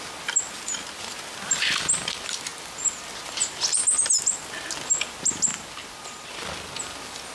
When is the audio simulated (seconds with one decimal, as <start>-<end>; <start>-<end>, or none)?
none